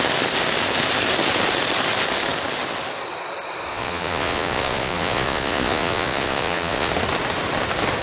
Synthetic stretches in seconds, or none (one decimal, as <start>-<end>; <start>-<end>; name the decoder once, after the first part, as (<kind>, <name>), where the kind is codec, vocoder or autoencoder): 3.7-6.9 (vocoder, Vocos)